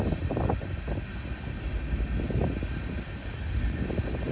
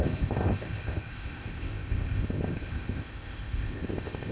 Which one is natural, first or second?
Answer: first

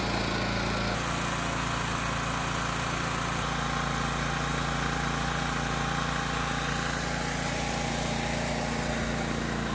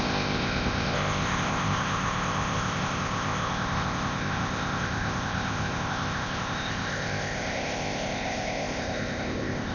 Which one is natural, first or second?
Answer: first